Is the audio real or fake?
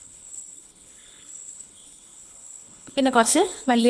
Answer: fake